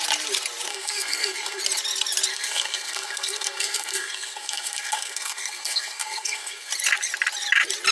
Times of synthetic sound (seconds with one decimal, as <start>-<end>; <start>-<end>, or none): 0.7-1.6; 2.3-6.7